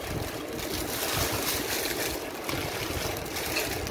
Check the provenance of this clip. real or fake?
real